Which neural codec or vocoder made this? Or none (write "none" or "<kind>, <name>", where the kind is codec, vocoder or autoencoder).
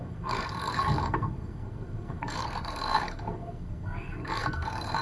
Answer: codec, SNAC